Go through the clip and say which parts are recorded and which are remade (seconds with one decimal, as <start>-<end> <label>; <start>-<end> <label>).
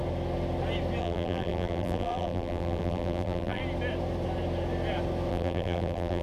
0.0-1.0 recorded; 1.0-3.6 remade; 3.6-5.3 recorded; 5.3-6.2 remade